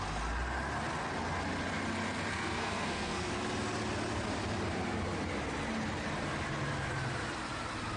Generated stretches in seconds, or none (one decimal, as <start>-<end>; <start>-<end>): 2.3-3.3